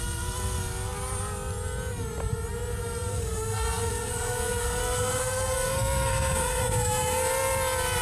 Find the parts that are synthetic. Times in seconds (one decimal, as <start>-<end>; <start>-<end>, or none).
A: 3.1-7.3